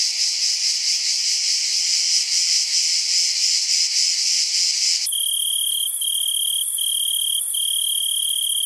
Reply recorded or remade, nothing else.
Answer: recorded